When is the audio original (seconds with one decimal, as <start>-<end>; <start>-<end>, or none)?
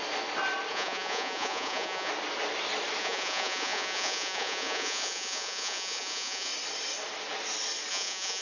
0.0-0.7; 2.1-3.0; 6.5-7.9